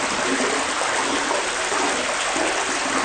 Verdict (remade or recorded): recorded